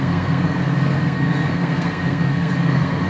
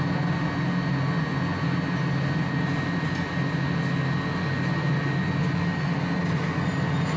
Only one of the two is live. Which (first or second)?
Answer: second